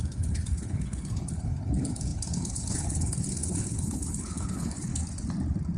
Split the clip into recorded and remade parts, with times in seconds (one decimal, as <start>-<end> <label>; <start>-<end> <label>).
0.0-4.9 remade; 4.9-5.8 recorded